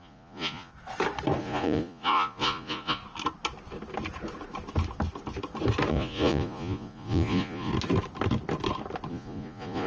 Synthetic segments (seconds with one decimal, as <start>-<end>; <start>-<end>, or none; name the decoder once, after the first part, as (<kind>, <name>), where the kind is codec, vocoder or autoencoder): 0.0-0.7 (vocoder, Vocos); 1.4-3.0; 5.9-7.7; 9.1-9.9